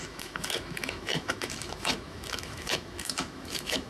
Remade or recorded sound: remade